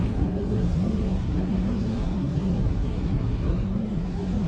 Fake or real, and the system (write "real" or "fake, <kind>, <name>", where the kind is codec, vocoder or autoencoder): fake, codec, SNAC